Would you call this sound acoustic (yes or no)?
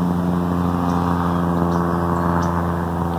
yes